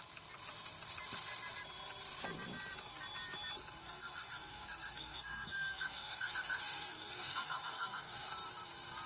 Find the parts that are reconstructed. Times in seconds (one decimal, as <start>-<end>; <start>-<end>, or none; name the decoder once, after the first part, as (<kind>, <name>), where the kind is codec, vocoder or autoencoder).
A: 3.8-8.3 (codec, SNAC)